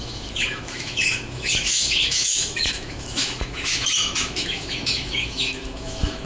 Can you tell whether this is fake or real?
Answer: fake